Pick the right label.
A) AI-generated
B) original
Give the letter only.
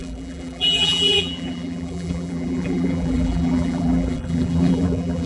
A